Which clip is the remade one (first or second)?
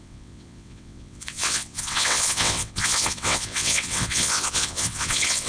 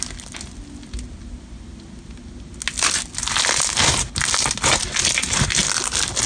first